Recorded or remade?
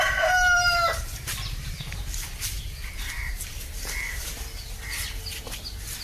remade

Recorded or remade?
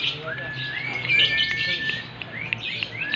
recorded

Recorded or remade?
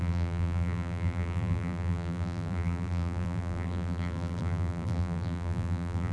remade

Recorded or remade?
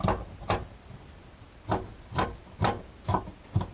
recorded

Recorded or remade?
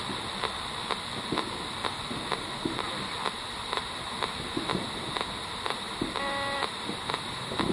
recorded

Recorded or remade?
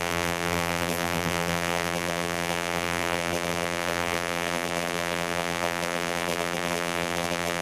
remade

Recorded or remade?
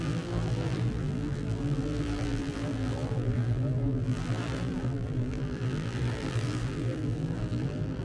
remade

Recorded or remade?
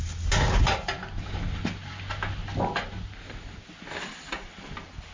recorded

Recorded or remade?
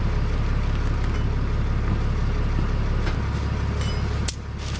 recorded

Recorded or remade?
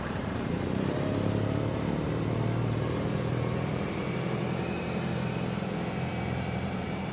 remade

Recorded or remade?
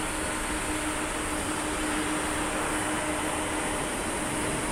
recorded